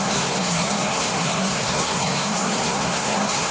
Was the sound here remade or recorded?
remade